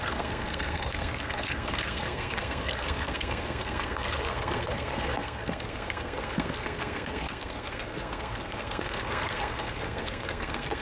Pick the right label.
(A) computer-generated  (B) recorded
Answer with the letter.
A